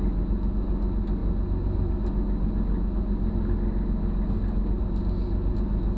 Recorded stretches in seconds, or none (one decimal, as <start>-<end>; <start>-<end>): 0.0-6.0